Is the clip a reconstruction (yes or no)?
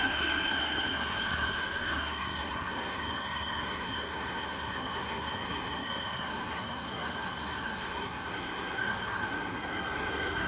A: yes